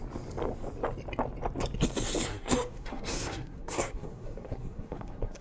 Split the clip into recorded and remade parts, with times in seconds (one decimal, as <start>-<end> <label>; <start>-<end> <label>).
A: 0.0-2.3 recorded; 2.3-5.4 remade